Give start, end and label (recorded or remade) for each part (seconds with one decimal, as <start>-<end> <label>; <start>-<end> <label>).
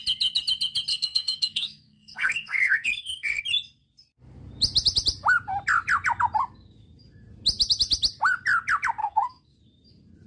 0.0-0.9 recorded; 0.9-3.4 remade; 3.4-9.0 recorded; 9.0-9.6 remade; 9.6-10.3 recorded